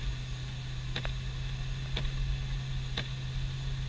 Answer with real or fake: real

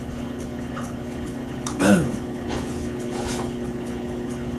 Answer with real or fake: fake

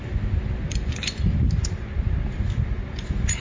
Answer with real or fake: real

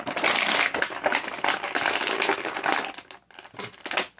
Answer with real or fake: real